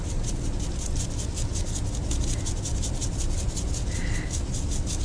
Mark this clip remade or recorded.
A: recorded